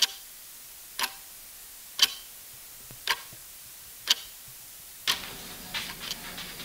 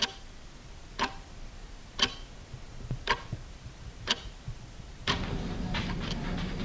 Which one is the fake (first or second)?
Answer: second